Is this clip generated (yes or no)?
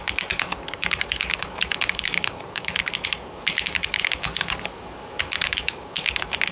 yes